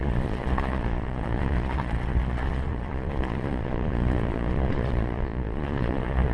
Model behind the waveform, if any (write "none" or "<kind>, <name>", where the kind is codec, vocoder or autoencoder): vocoder, Vocos